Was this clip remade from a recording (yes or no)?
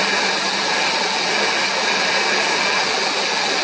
no